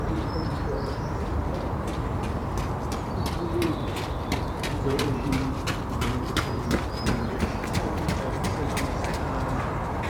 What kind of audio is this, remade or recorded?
recorded